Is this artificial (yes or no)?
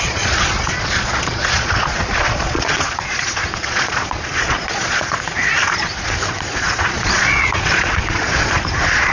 yes